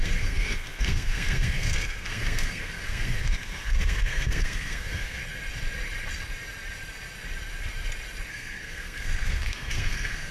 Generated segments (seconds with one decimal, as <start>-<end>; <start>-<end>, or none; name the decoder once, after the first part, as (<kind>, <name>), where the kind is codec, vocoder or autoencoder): 0.0-5.2 (codec, SNAC); 8.3-10.3